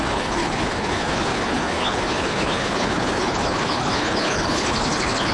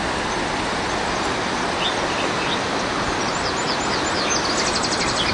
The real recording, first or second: second